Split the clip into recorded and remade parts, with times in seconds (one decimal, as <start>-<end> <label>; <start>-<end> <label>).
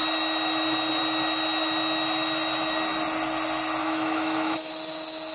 0.0-3.8 recorded; 3.8-4.7 remade; 4.7-5.3 recorded